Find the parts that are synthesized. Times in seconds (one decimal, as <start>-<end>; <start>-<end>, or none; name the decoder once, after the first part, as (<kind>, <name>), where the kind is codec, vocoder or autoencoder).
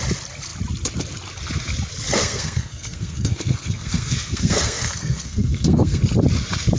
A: 2.2-6.0 (codec, SNAC)